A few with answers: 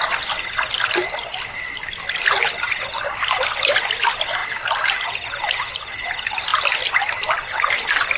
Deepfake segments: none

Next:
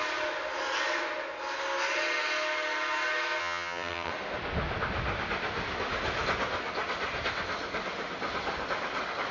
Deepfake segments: 3.4-4.1 (vocoder, HiFi-GAN)

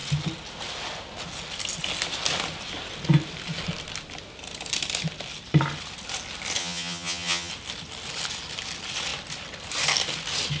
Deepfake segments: 6.6-7.5 (vocoder, HiFi-GAN)

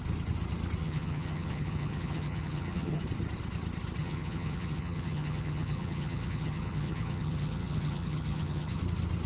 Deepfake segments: 0.8-3.0 (vocoder, HiFi-GAN); 4.0-8.8

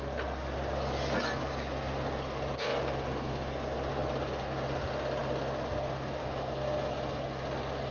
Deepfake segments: none